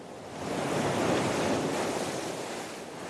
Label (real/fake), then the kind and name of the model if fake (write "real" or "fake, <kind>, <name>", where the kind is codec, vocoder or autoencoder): real